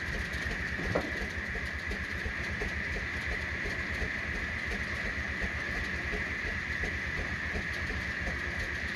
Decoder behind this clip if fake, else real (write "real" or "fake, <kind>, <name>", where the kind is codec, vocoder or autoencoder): real